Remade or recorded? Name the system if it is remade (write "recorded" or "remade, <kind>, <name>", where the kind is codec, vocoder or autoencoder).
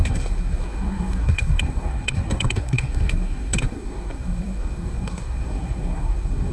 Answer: remade, codec, SNAC